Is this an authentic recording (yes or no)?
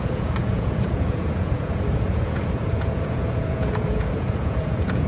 no